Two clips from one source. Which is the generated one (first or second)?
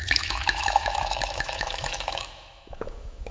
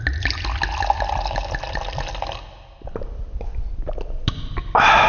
first